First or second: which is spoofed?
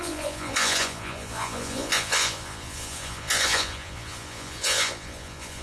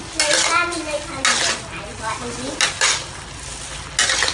first